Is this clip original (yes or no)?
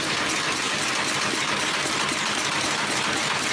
yes